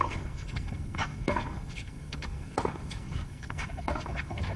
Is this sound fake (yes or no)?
yes